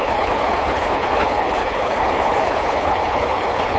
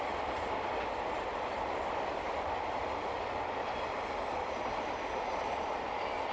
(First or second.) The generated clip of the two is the first